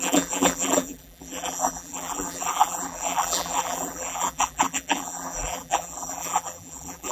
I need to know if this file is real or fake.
fake